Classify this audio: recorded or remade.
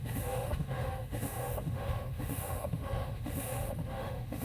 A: remade